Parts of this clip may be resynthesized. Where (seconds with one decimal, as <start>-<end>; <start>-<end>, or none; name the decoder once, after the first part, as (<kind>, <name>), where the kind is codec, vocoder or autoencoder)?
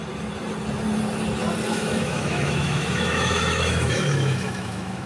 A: 1.7-5.1 (autoencoder, DAC-VAE)